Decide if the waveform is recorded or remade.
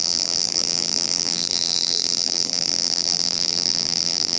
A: remade